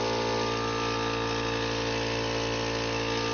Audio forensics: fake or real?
real